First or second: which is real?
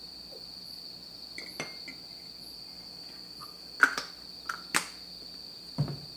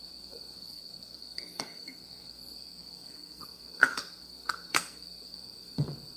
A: first